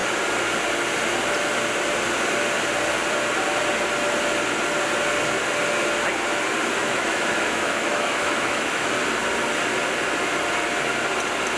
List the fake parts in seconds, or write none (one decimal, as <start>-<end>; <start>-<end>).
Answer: 6.8-8.9